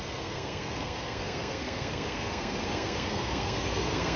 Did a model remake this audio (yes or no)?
yes